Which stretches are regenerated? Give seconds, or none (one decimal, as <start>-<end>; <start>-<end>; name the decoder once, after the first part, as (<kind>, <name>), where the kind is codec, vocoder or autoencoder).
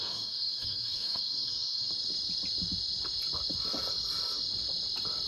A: 0.0-1.9 (codec, DAC)